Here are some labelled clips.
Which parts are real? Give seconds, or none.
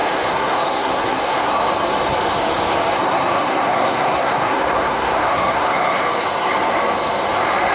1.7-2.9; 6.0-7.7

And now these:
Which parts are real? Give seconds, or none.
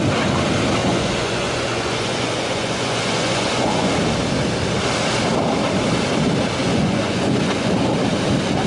0.0-0.8; 3.9-6.6; 7.7-8.7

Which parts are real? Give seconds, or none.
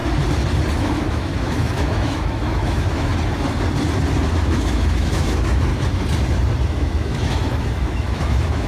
0.0-0.8; 3.1-4.3; 5.7-6.7